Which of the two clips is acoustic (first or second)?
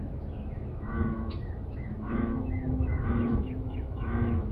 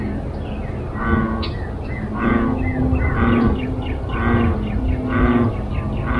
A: second